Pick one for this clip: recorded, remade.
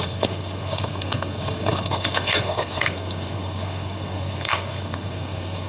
remade